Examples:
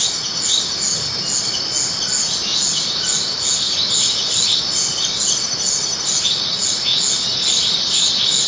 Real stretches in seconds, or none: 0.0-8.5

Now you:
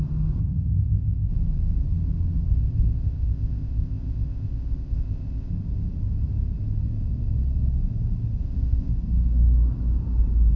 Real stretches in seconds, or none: 0.0-0.4; 1.3-2.5; 5.5-8.4; 8.9-10.6

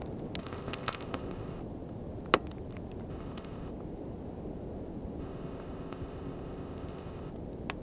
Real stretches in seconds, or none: 0.0-0.4; 1.6-3.1; 3.7-5.2; 7.3-7.8